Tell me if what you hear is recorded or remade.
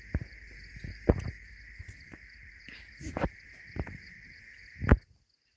recorded